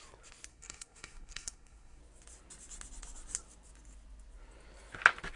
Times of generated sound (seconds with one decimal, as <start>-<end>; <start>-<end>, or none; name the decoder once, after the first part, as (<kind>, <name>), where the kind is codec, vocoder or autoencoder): 0.5-2.0 (codec, SNAC)